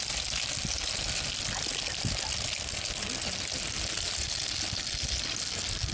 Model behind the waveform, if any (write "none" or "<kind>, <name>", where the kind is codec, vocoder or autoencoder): none